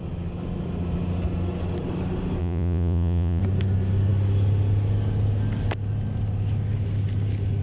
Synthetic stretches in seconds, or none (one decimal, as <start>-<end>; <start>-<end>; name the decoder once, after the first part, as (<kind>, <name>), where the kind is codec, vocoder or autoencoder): 2.4-3.4 (vocoder, Vocos)